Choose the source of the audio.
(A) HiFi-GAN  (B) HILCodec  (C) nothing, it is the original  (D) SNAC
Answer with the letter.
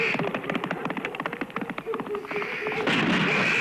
C